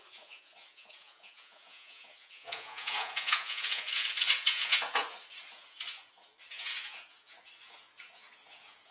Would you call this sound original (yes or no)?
no